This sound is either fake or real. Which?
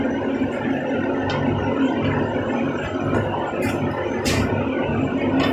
real